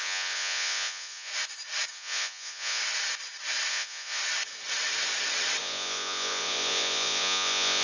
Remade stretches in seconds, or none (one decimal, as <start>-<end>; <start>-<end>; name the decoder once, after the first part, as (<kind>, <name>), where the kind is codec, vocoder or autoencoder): 0.0-1.3 (vocoder, Vocos); 1.9-2.8; 3.7-4.2; 5.6-7.8